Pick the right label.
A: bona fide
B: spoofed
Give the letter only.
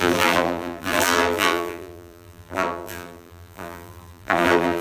B